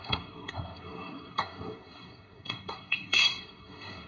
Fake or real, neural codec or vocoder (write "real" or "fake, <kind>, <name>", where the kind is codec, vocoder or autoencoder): fake, codec, SNAC